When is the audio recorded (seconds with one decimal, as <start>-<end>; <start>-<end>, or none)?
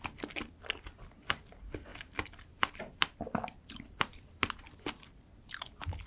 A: 0.0-1.9; 2.8-3.5